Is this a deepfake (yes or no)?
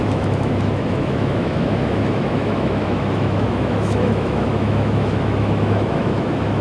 yes